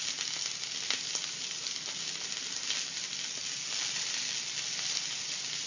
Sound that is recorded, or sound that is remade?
recorded